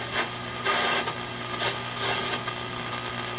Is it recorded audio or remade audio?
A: recorded